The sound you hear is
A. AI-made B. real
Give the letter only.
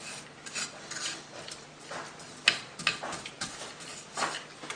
B